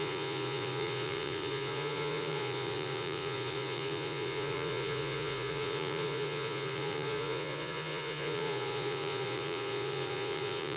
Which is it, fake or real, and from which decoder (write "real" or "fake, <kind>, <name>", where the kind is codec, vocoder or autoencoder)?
fake, vocoder, Vocos